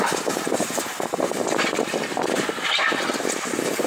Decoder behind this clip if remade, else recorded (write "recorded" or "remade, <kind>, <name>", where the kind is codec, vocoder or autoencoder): remade, vocoder, BigVGAN v2